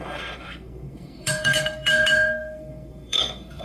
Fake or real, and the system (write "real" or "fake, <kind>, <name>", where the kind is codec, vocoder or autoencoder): fake, codec, SNAC